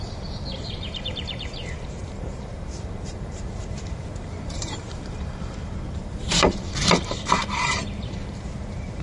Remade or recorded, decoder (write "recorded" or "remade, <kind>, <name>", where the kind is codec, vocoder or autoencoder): remade, vocoder, BigVGAN v2